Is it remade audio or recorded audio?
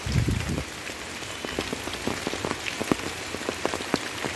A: recorded